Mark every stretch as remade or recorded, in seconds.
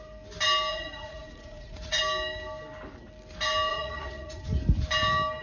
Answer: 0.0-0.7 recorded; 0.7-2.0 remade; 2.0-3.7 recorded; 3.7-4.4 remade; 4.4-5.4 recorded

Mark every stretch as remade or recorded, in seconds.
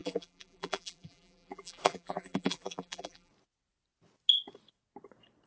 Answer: 0.0-3.3 remade; 3.3-5.5 recorded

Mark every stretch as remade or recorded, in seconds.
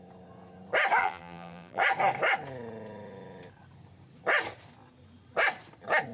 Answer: 0.0-1.0 recorded; 1.0-1.8 remade; 1.8-6.1 recorded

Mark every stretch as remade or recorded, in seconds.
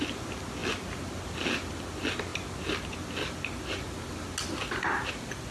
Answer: 0.0-5.5 recorded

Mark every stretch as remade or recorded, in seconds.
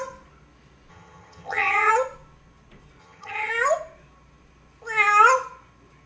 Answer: 0.0-0.9 recorded; 0.9-1.9 remade; 1.9-3.0 recorded; 3.0-3.5 remade; 3.5-6.1 recorded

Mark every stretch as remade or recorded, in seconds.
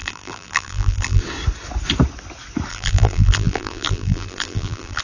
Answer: 0.0-1.2 remade; 1.2-2.7 recorded; 2.7-5.0 remade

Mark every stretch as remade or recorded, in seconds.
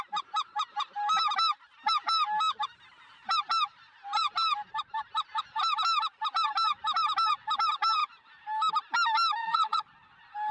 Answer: 0.0-9.4 recorded; 9.4-9.9 remade; 9.9-10.5 recorded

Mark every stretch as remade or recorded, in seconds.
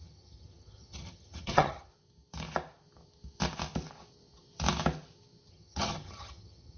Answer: 0.0-1.9 remade; 1.9-5.5 recorded; 5.5-6.8 remade